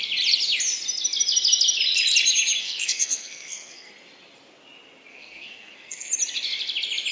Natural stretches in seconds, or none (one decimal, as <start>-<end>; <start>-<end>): 0.0-2.6; 3.9-5.1; 6.1-7.1